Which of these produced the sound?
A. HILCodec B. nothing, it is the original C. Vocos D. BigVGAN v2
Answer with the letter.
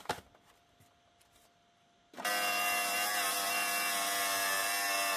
B